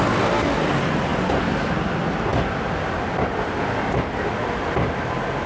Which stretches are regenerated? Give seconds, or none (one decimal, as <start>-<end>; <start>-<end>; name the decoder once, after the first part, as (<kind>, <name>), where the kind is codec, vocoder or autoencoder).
none